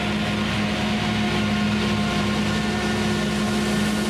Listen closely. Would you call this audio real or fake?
real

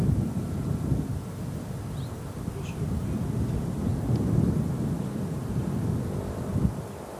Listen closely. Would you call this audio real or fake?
real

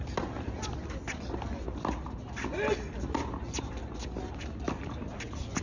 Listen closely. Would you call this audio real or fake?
real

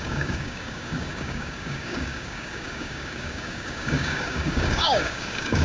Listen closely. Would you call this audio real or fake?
fake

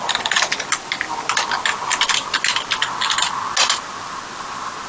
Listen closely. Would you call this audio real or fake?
real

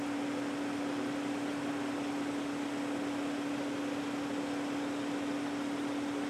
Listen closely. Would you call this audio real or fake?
real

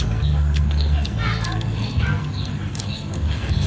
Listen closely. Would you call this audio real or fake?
fake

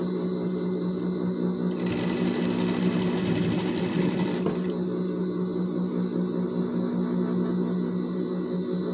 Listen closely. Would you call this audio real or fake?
real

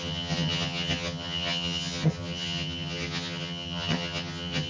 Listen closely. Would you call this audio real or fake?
fake